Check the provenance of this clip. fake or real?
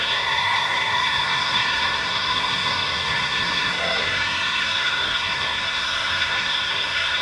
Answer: fake